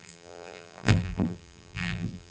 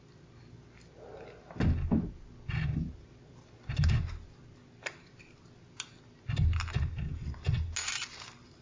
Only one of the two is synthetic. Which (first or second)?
first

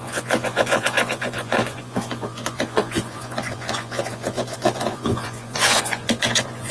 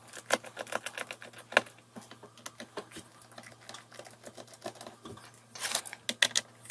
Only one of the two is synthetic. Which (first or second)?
first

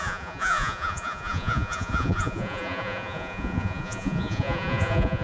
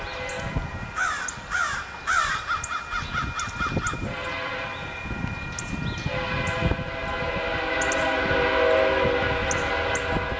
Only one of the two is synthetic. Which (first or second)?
first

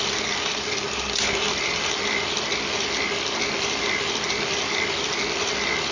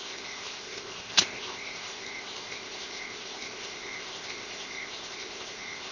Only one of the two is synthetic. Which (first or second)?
second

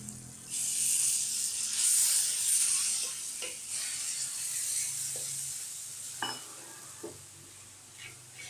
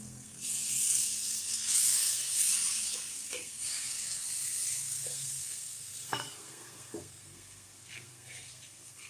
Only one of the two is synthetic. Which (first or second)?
second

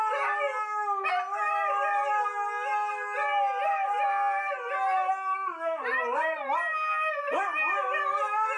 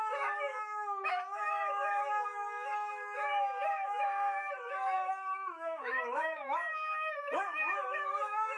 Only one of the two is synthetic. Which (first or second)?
second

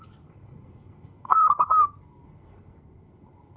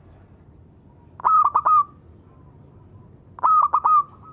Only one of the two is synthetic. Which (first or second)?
first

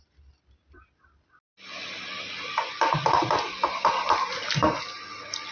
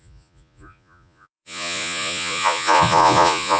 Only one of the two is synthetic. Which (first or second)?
second